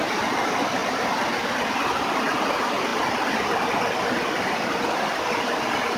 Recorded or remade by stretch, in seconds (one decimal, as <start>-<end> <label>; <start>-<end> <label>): 0.0-6.0 recorded